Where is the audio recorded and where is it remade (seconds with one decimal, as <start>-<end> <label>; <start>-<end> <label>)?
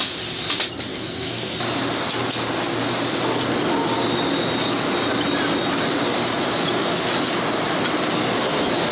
0.0-0.9 recorded; 0.9-1.6 remade; 1.6-8.9 recorded